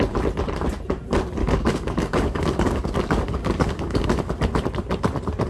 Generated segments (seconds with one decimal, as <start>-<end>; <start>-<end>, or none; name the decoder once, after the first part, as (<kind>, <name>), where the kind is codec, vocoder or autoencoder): 1.4-4.3 (codec, DAC)